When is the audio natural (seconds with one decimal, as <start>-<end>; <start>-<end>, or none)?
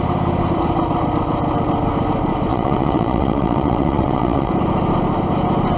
0.0-2.5; 4.5-5.8